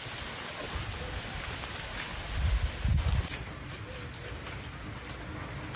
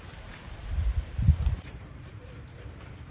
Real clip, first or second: first